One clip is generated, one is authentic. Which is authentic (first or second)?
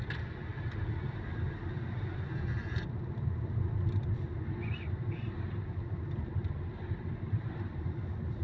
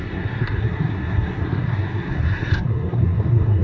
first